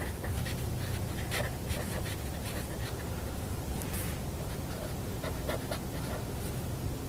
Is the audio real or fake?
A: real